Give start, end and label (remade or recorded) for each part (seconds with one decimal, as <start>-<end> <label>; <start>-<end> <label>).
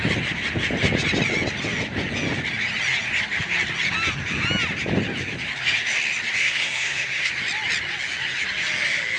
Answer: 0.0-6.4 recorded; 6.4-7.3 remade; 7.3-9.2 recorded